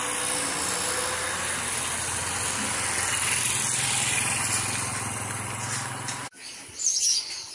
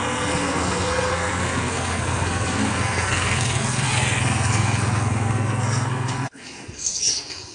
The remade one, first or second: second